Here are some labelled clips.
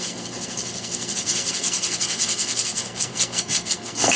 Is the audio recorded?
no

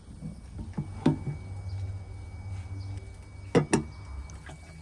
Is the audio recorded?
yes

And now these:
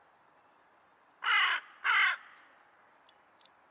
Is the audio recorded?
yes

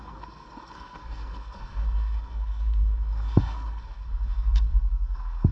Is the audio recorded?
no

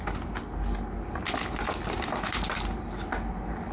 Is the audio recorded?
yes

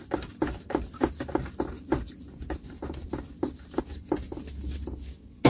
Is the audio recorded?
yes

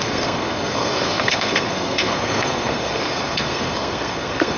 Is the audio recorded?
no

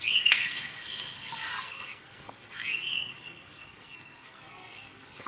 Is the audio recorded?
no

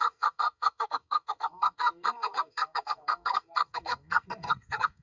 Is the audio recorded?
no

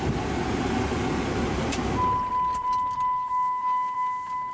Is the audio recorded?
yes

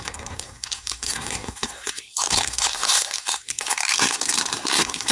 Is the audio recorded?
no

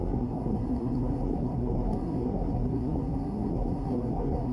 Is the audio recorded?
no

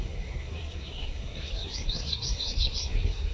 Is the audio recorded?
no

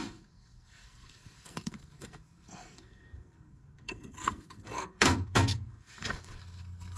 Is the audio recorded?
no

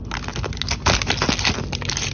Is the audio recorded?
yes